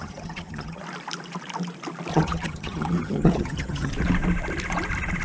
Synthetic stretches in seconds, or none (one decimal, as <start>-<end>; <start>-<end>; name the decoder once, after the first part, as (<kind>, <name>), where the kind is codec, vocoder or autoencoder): 0.0-0.8 (vocoder, HiFi-GAN); 2.1-3.9